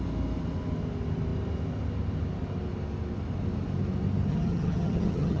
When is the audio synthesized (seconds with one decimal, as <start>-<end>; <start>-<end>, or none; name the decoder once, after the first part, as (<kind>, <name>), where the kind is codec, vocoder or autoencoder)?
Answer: 4.3-5.4 (vocoder, HiFi-GAN)